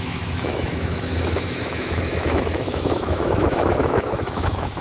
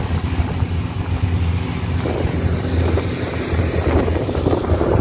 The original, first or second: second